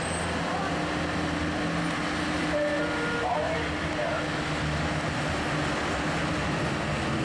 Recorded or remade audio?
recorded